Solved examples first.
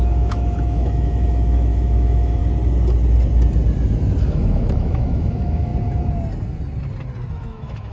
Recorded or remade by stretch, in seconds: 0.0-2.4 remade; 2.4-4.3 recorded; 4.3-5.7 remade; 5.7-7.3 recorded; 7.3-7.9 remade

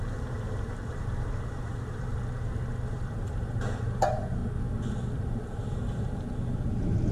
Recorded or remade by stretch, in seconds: 0.0-2.1 remade; 2.1-2.9 recorded; 2.9-4.4 remade; 4.4-5.1 recorded; 5.1-7.1 remade

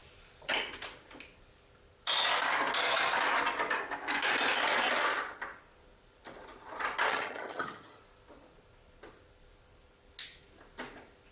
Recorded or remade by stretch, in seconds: 0.0-7.1 recorded; 7.1-8.0 remade; 8.0-11.3 recorded

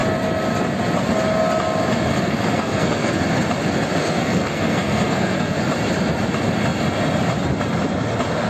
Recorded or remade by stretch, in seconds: 0.0-2.1 recorded; 2.1-3.2 remade; 3.2-4.0 recorded; 4.0-5.6 remade; 5.6-8.5 recorded

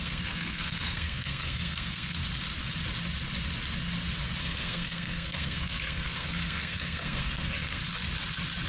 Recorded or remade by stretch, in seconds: 0.0-2.2 remade; 2.2-4.4 recorded; 4.4-7.8 remade; 7.8-8.7 recorded

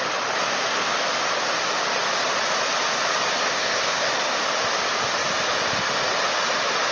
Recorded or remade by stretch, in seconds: 0.0-3.5 recorded; 3.5-4.1 remade; 4.1-6.9 recorded

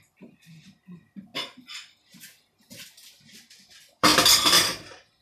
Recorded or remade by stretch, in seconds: 0.0-1.3 remade; 1.3-2.7 recorded; 2.7-4.1 remade; 4.1-5.2 recorded

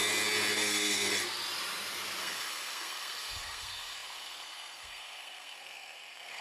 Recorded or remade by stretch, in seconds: 0.0-0.5 recorded; 0.5-1.1 remade; 1.1-2.2 recorded; 2.2-6.4 remade